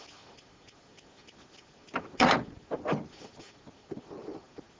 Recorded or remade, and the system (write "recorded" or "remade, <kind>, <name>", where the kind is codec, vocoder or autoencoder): recorded